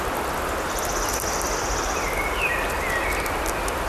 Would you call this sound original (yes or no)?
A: yes